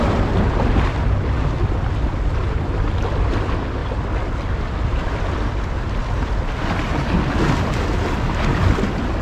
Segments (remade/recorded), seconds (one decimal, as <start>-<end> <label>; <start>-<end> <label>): 0.0-9.2 recorded